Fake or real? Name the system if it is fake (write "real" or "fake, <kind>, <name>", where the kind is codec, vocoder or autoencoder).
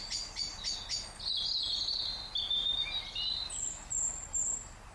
real